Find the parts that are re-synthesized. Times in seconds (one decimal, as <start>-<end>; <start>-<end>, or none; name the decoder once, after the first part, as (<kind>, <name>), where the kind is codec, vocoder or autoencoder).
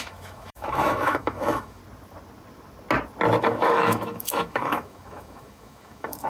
0.0-1.8 (autoencoder, DAC-VAE); 3.4-6.3